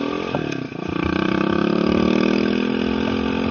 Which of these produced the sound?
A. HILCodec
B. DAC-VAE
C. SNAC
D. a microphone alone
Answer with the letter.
D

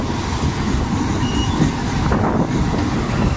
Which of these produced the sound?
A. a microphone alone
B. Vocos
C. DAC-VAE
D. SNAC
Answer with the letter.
A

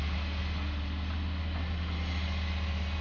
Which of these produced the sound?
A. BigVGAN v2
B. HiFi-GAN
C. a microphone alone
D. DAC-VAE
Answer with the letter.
C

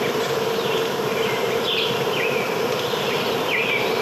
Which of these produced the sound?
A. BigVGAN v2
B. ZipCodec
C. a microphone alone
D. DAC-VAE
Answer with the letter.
C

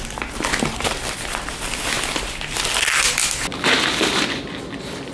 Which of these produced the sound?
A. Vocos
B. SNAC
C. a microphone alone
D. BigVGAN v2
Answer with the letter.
C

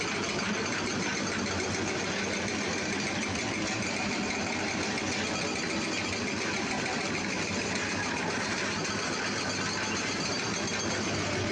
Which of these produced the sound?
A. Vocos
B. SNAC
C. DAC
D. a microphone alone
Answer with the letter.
D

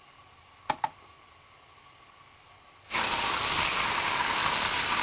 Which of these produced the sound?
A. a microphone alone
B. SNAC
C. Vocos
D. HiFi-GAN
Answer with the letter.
A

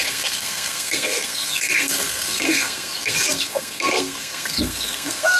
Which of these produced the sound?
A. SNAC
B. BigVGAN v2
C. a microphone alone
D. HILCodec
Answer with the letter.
A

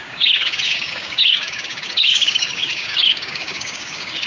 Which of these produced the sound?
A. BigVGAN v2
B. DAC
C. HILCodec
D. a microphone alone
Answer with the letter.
B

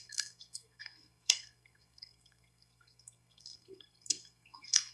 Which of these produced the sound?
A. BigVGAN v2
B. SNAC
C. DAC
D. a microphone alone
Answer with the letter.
B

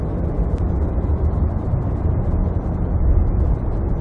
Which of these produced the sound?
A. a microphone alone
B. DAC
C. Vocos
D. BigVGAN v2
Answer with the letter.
A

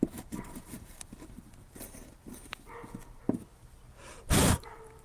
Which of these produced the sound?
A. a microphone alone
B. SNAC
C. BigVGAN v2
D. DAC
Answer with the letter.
C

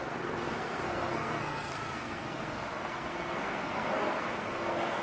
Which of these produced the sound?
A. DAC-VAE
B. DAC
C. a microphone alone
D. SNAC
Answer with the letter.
D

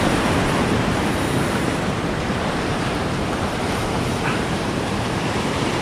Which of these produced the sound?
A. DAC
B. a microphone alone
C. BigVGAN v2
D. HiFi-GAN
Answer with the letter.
C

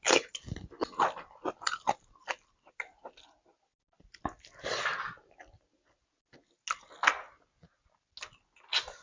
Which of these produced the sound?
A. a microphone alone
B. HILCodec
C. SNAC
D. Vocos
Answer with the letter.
A